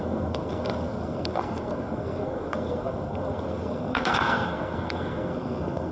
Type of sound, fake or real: fake